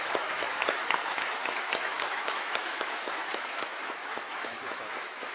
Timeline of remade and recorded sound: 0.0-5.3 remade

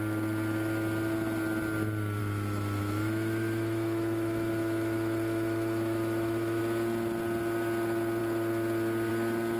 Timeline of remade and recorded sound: 0.0-2.2 recorded; 2.2-6.6 remade; 6.6-9.6 recorded

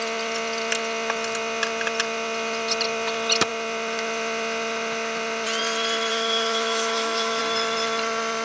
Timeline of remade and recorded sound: 0.0-6.1 recorded; 6.1-7.4 remade; 7.4-8.4 recorded